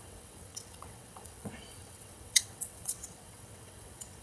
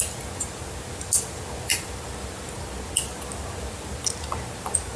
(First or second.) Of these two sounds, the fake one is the first